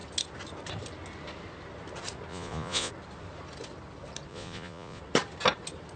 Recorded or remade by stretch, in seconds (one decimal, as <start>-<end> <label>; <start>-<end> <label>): 0.0-2.3 recorded; 2.3-2.9 remade; 2.9-4.3 recorded; 4.3-5.0 remade; 5.0-6.0 recorded